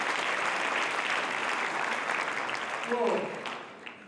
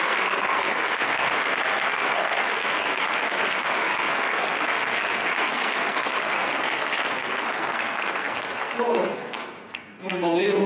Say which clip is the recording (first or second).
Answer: first